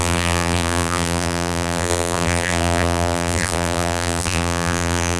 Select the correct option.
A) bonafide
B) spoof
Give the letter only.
B